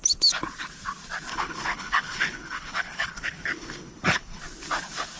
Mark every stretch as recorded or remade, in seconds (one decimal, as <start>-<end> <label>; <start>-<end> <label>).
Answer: 0.0-1.3 recorded; 1.3-4.4 remade; 4.4-5.2 recorded